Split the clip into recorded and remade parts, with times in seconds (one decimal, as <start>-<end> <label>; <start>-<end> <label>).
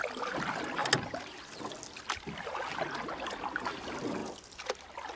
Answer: 0.0-5.2 recorded